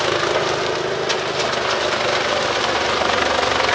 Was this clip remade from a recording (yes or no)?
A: no